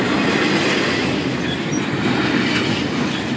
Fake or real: real